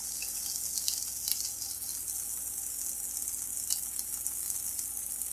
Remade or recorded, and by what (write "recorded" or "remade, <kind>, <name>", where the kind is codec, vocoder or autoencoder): recorded